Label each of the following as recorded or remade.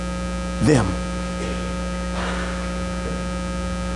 recorded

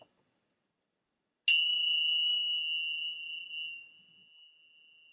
recorded